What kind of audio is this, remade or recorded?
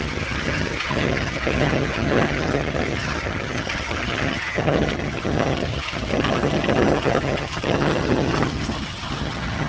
remade